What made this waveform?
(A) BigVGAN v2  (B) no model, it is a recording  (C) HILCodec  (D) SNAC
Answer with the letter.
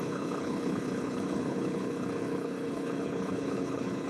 C